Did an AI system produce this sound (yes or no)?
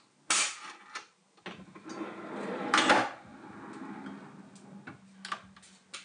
no